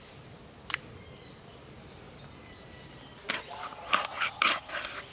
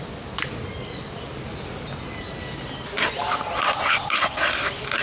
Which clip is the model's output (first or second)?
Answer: first